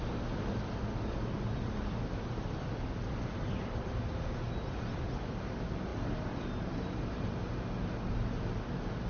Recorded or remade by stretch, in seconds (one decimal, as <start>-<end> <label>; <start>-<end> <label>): 0.0-9.1 recorded